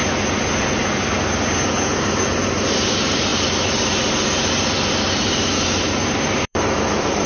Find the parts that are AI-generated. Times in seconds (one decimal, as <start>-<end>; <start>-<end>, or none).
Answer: 2.3-3.3; 5.4-7.3